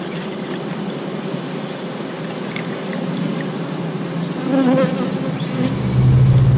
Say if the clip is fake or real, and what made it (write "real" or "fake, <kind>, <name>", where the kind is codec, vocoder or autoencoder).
real